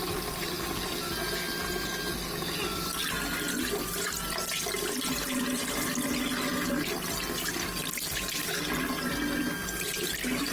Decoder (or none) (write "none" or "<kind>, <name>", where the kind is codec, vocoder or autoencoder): none